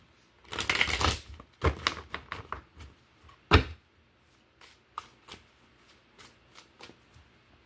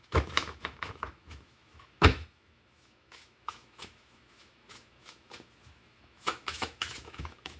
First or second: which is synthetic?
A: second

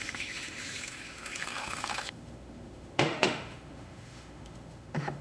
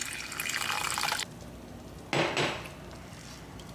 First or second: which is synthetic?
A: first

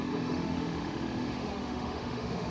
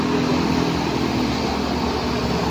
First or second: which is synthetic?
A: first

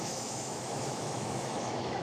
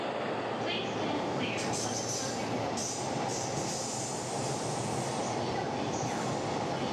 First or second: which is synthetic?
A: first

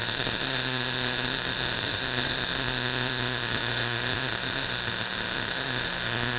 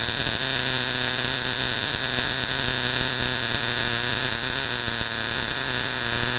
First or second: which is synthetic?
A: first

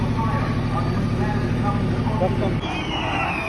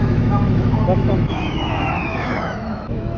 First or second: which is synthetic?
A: second